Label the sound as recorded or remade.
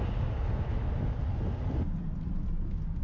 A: recorded